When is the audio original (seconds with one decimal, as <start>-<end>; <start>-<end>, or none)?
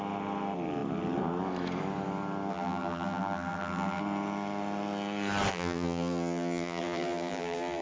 0.0-2.5; 4.0-5.5